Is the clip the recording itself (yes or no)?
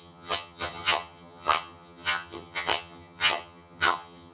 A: no